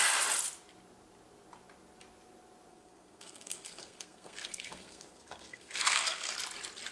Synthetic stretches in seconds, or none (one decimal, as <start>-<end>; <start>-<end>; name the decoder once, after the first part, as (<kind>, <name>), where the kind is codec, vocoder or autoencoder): 2.7-6.3 (codec, SNAC)

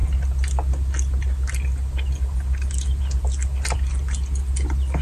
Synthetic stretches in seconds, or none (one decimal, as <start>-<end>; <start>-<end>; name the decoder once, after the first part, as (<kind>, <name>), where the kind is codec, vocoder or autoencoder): none